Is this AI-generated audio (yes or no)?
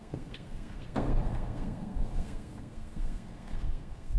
yes